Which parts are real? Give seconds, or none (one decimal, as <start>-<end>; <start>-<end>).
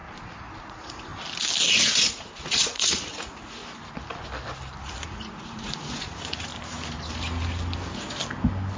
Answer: 0.0-0.6; 1.1-1.7; 3.6-4.9; 6.5-8.8